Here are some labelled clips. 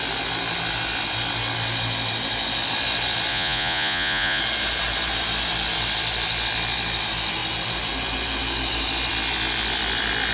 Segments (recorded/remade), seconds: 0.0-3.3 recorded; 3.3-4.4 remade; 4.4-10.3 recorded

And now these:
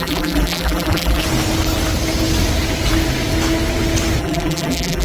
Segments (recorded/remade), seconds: 0.0-1.2 remade; 1.2-4.2 recorded; 4.2-5.0 remade